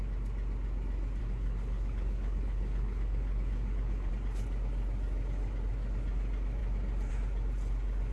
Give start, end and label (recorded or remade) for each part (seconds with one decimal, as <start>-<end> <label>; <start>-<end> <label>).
0.0-1.2 recorded; 1.2-4.1 remade; 4.1-8.1 recorded